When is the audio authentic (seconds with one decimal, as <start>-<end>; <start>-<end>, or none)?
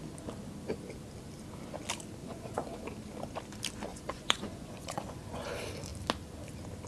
0.0-2.2; 2.8-3.9; 5.5-6.9